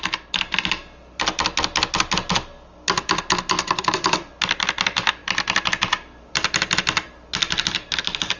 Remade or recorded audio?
recorded